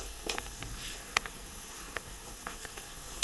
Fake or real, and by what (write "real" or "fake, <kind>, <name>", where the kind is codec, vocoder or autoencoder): fake, codec, SNAC